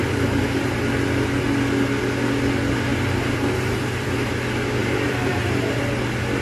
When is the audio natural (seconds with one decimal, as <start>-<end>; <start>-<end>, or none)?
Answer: 0.8-2.9; 4.3-4.8; 5.8-6.4